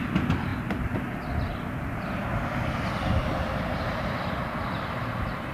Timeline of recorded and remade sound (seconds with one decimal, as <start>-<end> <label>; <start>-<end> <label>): 0.0-5.5 recorded